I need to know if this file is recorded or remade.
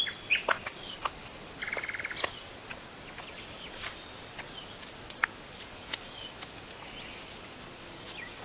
recorded